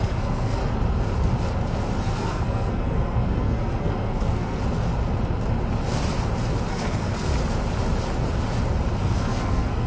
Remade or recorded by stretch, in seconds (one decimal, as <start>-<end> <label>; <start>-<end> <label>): 0.0-0.6 remade; 0.6-2.0 recorded; 2.0-4.6 remade; 4.6-6.7 recorded; 6.7-7.3 remade; 7.3-9.0 recorded; 9.0-9.9 remade